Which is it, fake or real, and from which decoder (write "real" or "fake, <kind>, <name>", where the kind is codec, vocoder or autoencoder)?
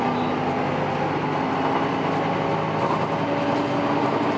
real